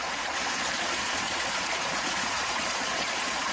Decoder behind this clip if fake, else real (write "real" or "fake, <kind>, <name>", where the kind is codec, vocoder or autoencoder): fake, vocoder, Vocos